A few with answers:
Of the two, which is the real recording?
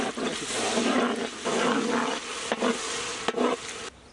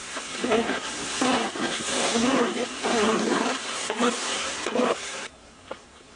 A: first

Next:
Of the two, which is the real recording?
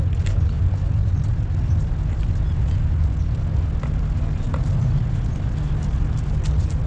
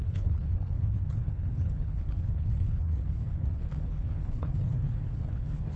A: first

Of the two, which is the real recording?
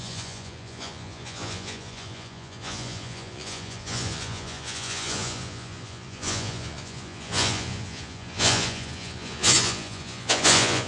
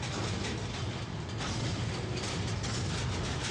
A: second